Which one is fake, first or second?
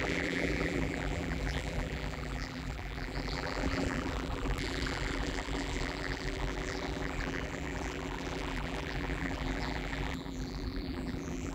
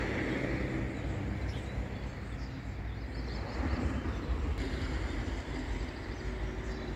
first